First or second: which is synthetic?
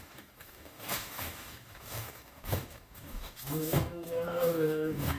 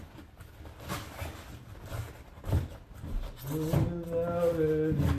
first